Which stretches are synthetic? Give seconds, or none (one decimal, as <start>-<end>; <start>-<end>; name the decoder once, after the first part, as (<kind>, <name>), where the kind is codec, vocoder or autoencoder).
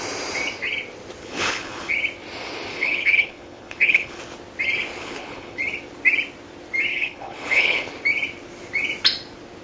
1.2-1.9 (codec, HILCodec); 2.7-4.2; 5.0-5.6; 6.9-7.9